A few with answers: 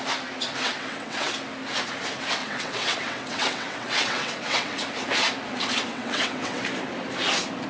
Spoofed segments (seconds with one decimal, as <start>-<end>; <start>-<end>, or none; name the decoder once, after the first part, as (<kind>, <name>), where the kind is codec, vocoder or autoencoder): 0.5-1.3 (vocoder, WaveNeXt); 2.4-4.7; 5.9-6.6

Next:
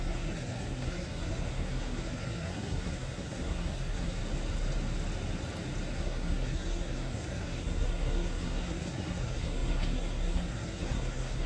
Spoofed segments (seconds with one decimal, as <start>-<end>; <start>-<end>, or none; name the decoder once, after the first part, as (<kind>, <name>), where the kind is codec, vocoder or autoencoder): 0.0-4.2 (codec, SNAC); 5.9-11.5

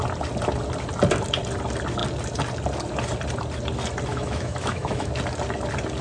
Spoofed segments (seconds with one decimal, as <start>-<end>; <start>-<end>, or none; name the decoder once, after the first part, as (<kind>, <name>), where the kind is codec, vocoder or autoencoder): 4.1-5.1 (autoencoder, DAC-VAE)

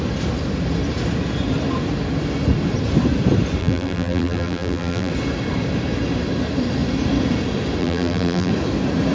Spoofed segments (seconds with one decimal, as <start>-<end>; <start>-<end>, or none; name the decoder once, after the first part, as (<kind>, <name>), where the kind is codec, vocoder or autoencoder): 3.6-5.1 (vocoder, BigVGAN v2); 7.8-8.5

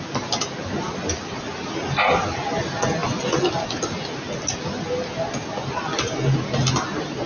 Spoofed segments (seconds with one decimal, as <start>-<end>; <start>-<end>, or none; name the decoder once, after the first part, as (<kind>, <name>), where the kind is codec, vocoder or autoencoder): none

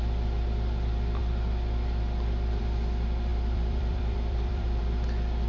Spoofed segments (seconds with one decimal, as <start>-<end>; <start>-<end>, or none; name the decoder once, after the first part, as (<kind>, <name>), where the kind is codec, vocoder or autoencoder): 3.3-4.8 (vocoder, BigVGAN v2)